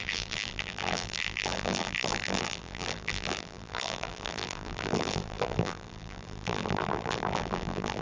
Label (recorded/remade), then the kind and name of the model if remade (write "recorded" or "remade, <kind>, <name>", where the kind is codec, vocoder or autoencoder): remade, vocoder, BigVGAN v2